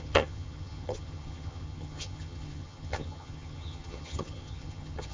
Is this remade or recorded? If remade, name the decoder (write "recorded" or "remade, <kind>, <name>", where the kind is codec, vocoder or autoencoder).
remade, vocoder, HiFi-GAN